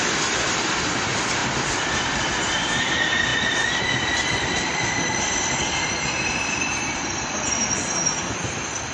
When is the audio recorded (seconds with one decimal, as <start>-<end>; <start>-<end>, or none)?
none